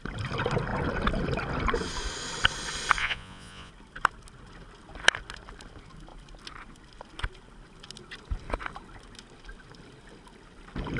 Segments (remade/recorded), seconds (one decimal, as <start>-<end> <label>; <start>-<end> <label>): 0.0-3.0 recorded; 3.0-3.7 remade; 3.7-11.0 recorded